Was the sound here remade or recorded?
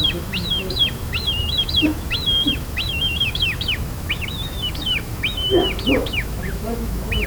remade